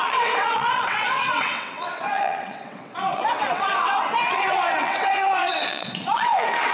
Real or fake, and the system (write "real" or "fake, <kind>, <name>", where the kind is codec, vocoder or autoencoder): fake, vocoder, WaveNeXt